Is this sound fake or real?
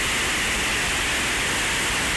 real